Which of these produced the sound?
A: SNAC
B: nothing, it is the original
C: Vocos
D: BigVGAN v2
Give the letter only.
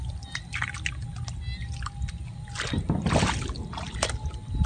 B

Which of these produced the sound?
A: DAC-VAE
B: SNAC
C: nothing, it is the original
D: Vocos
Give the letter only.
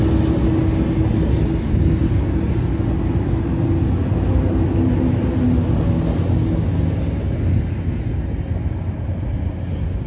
C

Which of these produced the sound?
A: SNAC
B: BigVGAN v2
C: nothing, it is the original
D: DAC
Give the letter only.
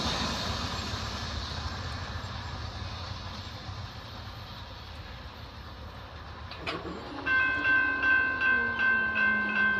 C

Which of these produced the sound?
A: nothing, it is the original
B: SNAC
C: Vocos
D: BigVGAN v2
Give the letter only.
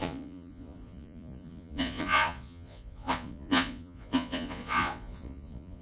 C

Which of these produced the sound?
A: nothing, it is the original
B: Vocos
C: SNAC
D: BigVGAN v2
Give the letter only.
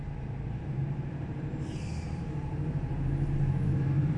D